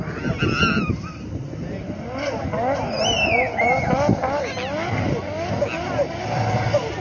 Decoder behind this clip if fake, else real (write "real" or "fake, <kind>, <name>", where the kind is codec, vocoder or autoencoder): real